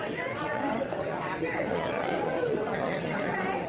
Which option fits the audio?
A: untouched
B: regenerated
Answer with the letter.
B